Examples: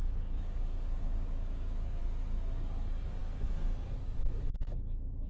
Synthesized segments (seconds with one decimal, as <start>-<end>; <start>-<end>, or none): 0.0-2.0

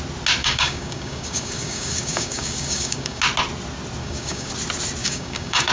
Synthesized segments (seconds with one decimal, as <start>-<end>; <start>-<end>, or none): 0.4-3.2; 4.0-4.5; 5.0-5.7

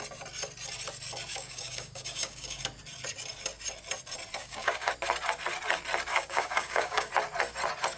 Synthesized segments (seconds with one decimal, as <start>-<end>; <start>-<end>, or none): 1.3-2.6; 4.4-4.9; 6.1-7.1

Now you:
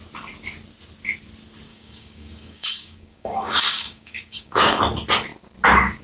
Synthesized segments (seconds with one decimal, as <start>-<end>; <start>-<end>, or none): 1.7-4.8